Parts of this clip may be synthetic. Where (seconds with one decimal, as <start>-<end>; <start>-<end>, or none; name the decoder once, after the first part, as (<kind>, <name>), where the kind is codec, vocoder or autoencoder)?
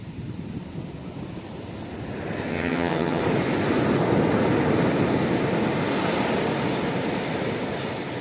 2.5-3.2 (vocoder, HiFi-GAN)